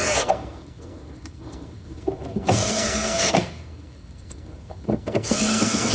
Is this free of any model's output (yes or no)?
no